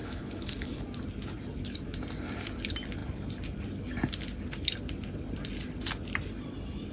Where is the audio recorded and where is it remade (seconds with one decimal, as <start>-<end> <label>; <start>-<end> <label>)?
0.0-0.8 remade; 0.8-6.9 recorded